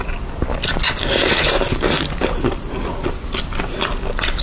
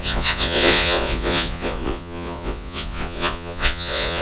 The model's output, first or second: second